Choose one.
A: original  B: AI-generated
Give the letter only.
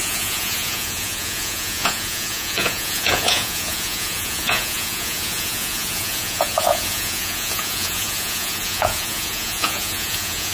B